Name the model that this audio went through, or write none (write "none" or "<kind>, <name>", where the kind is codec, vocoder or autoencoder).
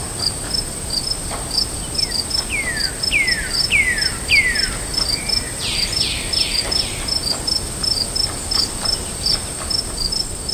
none